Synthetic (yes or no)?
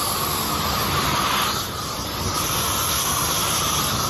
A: no